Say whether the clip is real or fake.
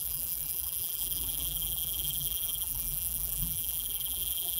fake